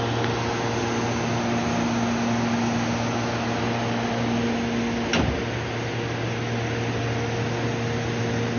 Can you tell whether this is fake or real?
real